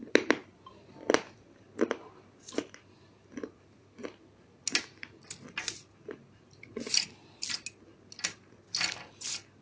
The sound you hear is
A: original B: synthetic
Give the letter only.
A